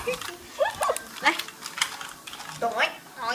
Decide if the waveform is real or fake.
real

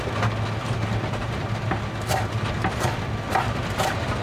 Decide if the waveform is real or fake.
real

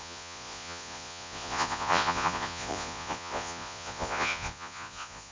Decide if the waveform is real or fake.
fake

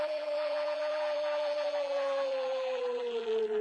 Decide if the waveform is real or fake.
fake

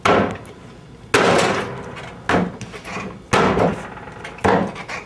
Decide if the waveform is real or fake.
real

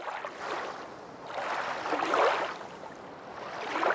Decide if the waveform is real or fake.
real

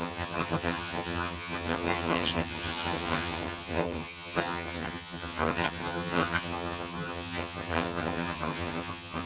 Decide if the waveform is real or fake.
fake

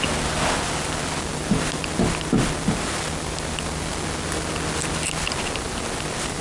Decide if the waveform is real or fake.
real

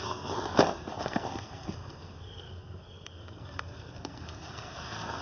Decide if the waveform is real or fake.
fake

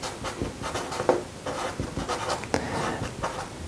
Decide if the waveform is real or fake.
real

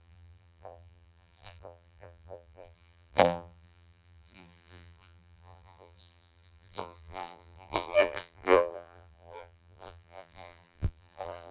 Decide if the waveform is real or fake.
fake